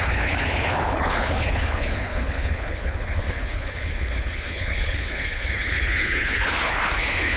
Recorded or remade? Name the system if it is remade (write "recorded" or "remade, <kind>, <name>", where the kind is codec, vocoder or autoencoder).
remade, codec, HILCodec